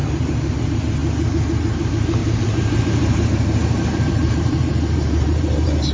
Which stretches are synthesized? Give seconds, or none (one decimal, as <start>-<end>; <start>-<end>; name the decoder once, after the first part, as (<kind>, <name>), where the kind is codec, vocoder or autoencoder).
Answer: 0.0-0.6 (vocoder, BigVGAN v2); 2.2-5.9